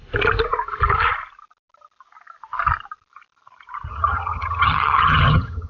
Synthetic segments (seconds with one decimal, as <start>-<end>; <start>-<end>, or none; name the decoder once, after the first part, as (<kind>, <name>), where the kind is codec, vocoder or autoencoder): 3.9-5.7 (vocoder, HiFi-GAN)